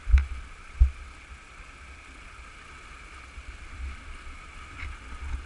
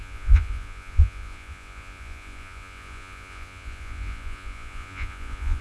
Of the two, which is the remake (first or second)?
second